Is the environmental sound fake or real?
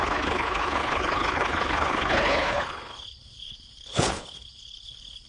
fake